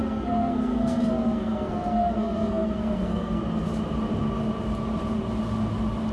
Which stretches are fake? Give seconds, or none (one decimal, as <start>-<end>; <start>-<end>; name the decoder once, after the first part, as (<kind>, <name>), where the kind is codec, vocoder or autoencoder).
0.0-3.4 (codec, SNAC)